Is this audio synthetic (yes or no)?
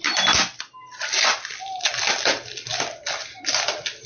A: no